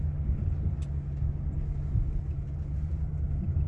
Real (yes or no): yes